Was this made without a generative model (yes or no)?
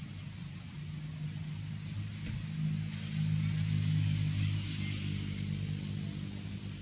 yes